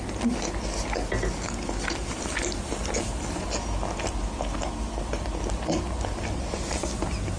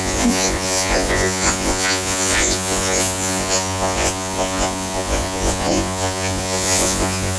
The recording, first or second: first